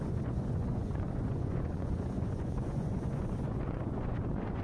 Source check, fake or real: fake